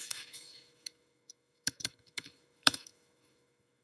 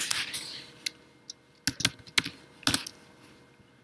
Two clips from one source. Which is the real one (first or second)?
second